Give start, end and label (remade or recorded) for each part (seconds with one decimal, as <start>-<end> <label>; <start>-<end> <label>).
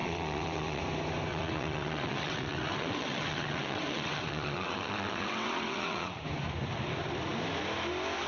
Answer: 0.0-0.8 remade; 0.8-1.3 recorded; 1.3-6.2 remade; 6.2-8.3 recorded